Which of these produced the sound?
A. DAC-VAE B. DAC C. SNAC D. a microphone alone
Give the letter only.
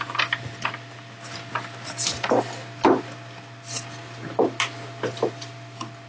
D